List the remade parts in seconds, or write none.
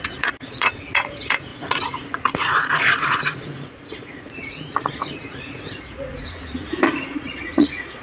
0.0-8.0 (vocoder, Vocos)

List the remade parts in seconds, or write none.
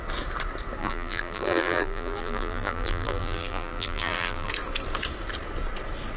0.8-4.5 (vocoder, BigVGAN v2)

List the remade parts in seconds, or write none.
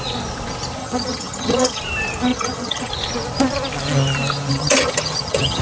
0.8-1.8 (vocoder, HiFi-GAN); 2.3-2.9; 4.5-5.6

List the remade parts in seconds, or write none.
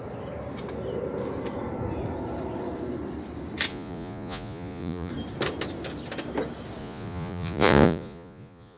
3.7-5.1 (vocoder, Vocos); 6.8-8.8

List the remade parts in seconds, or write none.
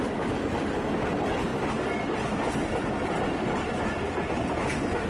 0.0-1.5 (vocoder, BigVGAN v2); 2.8-5.1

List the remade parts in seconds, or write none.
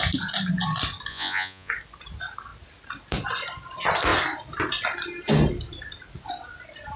1.1-1.7 (vocoder, Vocos)